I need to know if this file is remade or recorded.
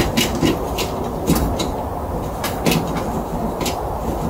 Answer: recorded